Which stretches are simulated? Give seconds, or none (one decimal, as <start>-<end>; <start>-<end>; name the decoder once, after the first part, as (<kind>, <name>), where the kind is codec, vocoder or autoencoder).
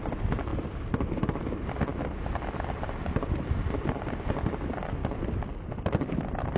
none